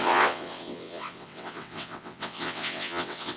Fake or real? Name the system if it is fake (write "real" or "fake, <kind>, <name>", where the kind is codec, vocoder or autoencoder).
fake, vocoder, WaveNeXt